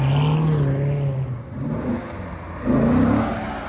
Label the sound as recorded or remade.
recorded